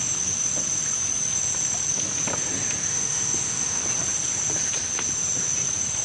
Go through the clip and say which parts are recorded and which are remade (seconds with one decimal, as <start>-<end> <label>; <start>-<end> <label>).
0.0-2.9 recorded; 2.9-3.8 remade; 3.8-6.0 recorded